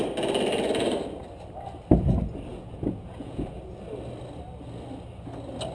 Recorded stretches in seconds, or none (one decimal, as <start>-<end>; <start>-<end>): 0.0-2.5; 3.6-5.7